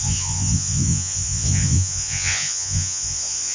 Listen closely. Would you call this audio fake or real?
fake